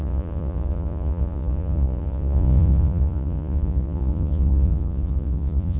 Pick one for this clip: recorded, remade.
remade